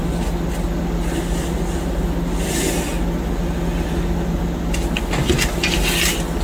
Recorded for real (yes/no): yes